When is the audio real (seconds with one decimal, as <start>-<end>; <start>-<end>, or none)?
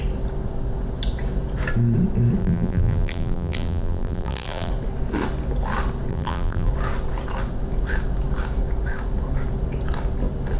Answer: 0.0-2.4; 4.7-6.1; 6.7-10.6